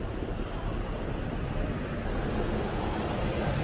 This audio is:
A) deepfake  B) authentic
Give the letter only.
A